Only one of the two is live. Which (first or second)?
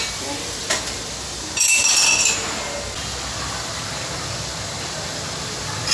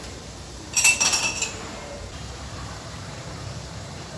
first